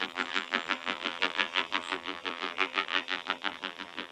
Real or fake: fake